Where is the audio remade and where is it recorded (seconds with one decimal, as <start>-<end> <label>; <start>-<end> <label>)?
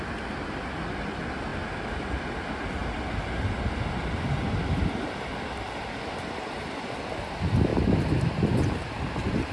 0.0-9.5 recorded